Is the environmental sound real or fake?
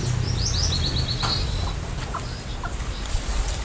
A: real